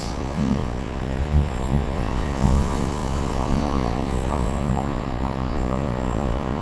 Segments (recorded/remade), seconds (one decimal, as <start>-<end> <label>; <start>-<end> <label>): 0.0-6.6 remade